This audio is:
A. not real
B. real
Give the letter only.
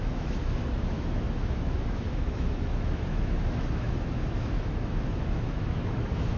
A